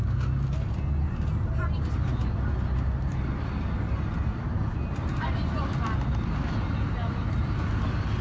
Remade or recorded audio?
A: recorded